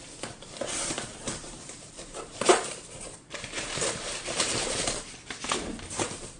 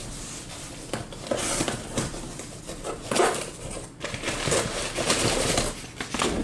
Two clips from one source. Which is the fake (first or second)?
first